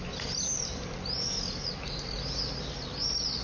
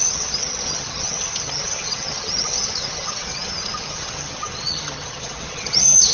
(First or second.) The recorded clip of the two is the first